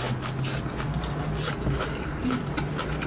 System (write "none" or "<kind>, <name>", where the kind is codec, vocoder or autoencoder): none